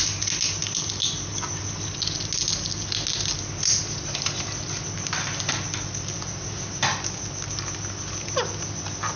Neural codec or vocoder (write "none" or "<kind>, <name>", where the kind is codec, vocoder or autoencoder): none